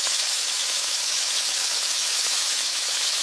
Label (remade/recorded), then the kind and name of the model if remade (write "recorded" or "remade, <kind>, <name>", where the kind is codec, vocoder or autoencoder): remade, autoencoder, DAC-VAE